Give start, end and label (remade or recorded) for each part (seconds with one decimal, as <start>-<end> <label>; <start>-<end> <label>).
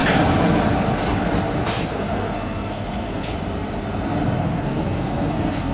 0.0-1.8 recorded; 1.8-3.3 remade; 3.3-4.4 recorded; 4.4-5.7 remade